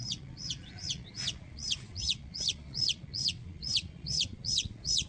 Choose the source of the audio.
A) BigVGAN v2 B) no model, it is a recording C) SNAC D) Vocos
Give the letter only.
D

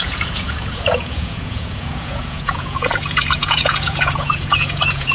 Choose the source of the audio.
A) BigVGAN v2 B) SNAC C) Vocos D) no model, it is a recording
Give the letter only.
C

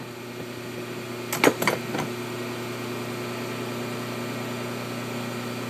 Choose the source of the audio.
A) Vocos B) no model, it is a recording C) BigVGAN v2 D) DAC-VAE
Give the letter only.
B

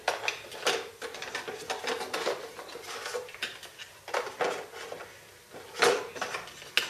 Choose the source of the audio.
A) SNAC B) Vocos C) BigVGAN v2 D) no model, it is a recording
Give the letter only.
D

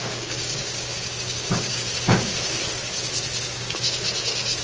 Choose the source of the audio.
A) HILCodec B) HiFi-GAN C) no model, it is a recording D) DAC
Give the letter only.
D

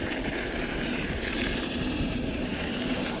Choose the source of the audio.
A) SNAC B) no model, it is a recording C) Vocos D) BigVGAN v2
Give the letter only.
D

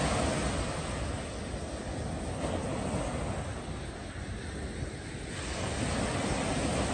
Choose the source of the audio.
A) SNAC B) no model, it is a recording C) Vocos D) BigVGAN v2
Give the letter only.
B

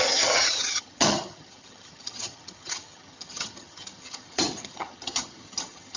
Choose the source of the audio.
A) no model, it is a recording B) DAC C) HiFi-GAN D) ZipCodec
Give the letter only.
C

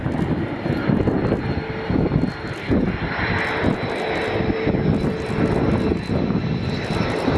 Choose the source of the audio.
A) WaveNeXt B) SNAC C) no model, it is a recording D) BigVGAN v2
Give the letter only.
C